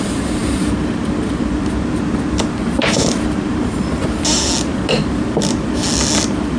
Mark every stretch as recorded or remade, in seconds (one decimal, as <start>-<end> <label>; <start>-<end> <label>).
0.0-2.6 recorded; 2.6-4.2 remade; 4.2-6.6 recorded